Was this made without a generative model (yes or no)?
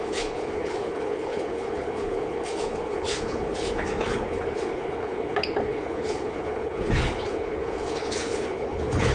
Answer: no